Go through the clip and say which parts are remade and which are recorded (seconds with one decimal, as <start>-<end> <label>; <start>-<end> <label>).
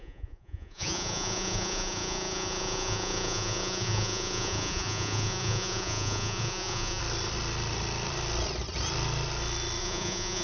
0.0-7.0 remade; 7.0-9.8 recorded; 9.8-10.4 remade